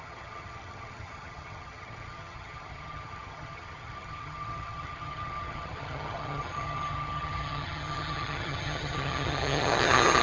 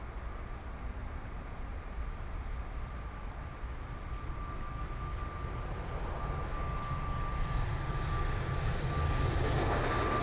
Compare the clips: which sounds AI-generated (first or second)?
first